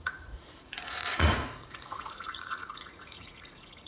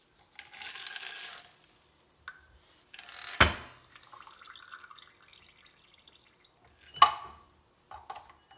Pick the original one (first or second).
second